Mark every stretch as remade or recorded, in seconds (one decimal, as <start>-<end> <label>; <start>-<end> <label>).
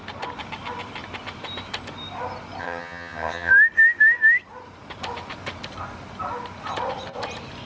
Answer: 0.0-2.6 recorded; 2.6-3.5 remade; 3.5-7.7 recorded